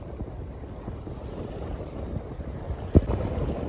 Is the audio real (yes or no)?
yes